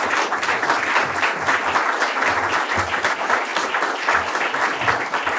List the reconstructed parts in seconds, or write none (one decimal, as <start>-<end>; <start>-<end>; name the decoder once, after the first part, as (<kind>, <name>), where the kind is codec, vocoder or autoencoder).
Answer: none